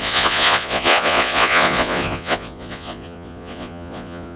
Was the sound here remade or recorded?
remade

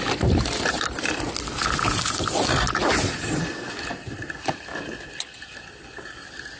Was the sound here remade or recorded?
recorded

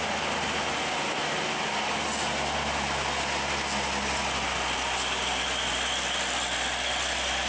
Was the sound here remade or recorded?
recorded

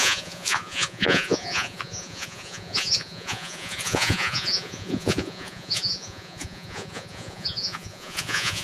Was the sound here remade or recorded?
remade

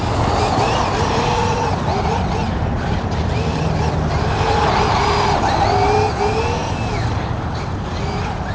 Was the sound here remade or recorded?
recorded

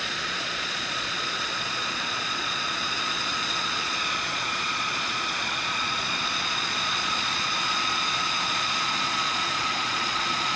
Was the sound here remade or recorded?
remade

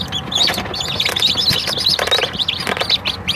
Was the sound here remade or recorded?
recorded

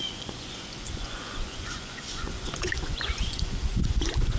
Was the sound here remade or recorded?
remade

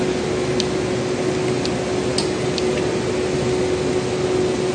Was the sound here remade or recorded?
recorded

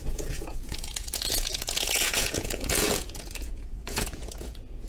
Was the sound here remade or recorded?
remade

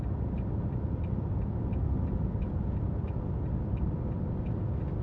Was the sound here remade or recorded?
recorded